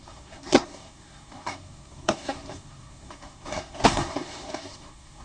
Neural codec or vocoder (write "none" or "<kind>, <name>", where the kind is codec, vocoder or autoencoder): codec, SNAC